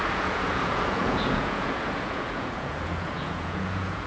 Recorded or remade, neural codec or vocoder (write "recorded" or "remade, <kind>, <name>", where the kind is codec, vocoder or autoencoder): remade, vocoder, Vocos